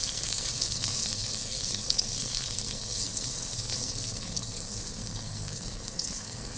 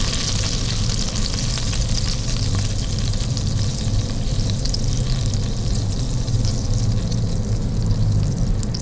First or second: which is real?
second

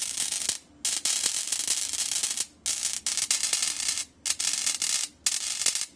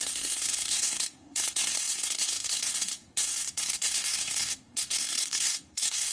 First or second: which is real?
first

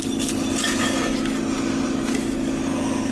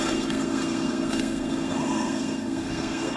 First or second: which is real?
first